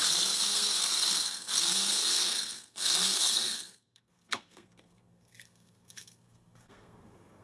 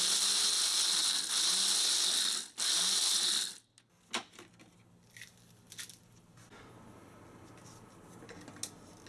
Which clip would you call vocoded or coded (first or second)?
first